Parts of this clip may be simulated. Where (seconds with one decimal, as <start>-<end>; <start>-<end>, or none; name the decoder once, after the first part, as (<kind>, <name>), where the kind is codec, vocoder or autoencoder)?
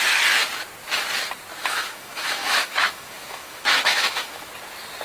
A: 1.6-4.5 (autoencoder, DAC-VAE)